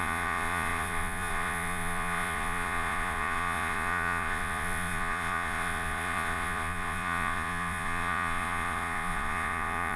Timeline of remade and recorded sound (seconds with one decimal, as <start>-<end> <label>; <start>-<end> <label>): 0.0-10.0 remade